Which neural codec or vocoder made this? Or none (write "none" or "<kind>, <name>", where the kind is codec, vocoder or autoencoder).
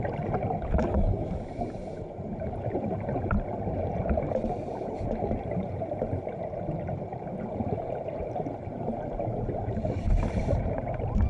vocoder, BigVGAN v2